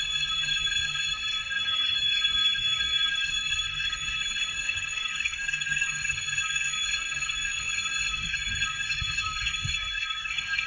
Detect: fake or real fake